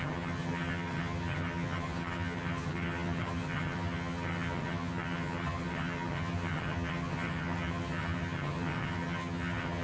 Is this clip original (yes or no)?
no